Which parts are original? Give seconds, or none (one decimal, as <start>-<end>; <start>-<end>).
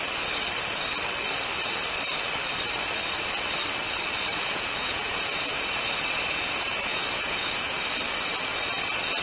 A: 0.0-4.2; 8.0-9.2